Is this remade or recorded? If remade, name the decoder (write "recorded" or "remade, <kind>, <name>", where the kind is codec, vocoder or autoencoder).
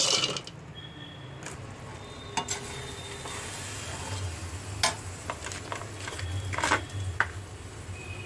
recorded